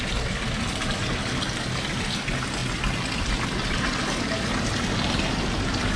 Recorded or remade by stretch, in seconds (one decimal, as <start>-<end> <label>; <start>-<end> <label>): 0.0-6.0 recorded